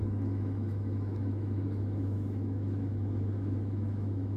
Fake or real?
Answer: fake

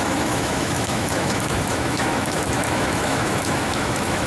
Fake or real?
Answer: fake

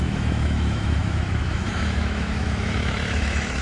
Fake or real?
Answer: fake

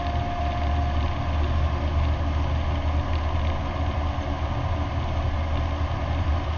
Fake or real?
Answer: real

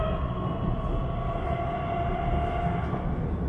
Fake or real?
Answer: real